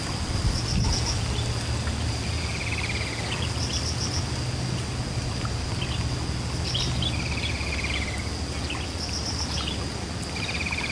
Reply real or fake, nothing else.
real